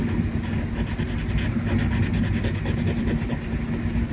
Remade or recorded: recorded